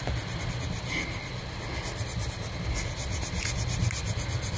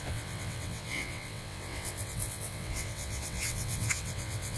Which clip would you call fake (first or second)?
second